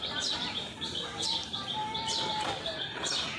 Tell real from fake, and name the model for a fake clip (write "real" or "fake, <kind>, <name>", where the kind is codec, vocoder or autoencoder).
fake, vocoder, BigVGAN v2